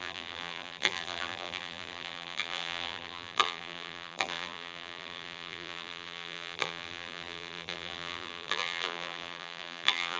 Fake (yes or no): yes